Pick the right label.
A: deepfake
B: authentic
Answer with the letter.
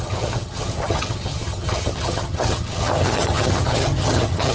A